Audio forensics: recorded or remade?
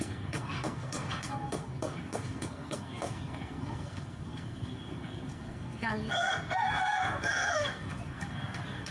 remade